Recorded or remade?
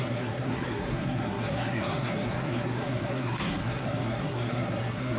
remade